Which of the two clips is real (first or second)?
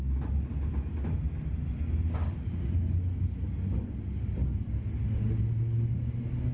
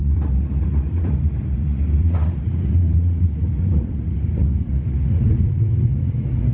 first